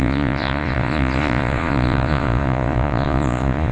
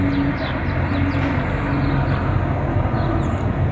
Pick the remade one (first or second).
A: first